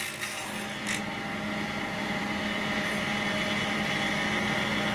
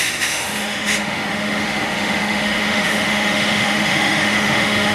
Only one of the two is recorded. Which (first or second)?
first